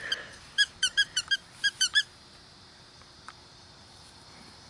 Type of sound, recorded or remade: remade